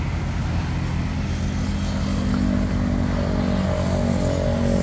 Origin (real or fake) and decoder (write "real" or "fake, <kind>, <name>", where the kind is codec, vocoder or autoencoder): real